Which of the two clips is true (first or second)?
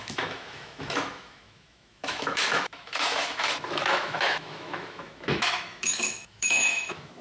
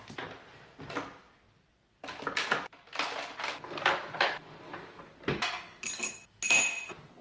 second